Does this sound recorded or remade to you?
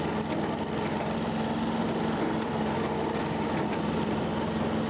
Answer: remade